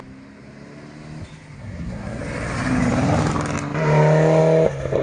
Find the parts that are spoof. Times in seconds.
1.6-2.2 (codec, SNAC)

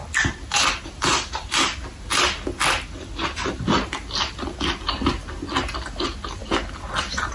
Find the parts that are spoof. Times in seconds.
none